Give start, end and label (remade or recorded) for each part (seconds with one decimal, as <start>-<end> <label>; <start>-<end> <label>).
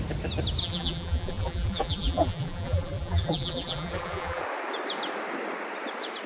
0.0-0.6 recorded; 0.6-4.4 remade; 4.4-6.3 recorded